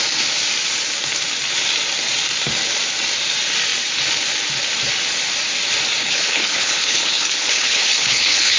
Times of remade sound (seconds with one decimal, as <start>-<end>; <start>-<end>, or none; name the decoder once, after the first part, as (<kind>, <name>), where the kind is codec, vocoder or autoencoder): 6.0-8.6 (codec, HILCodec)